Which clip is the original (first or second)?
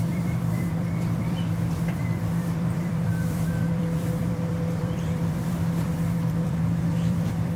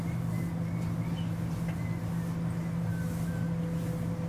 second